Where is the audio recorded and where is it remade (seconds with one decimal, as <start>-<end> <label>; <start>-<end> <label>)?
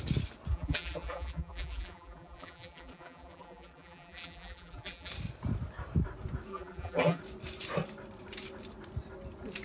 0.0-0.5 recorded; 0.5-5.1 remade; 5.1-6.5 recorded; 6.5-7.2 remade; 7.2-9.6 recorded